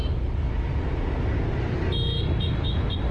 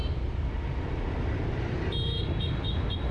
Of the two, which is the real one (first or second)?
first